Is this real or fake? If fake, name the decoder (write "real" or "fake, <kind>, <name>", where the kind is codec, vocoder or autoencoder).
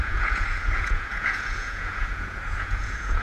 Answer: fake, vocoder, Vocos